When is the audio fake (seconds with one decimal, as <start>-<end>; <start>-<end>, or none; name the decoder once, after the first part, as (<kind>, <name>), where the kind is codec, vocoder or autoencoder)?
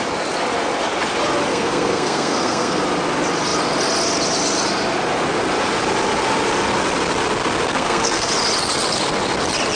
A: 1.5-2.8 (codec, SNAC); 7.7-8.3